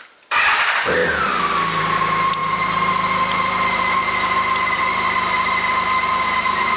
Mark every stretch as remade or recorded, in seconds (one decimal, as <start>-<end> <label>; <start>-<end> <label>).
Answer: 0.0-6.8 recorded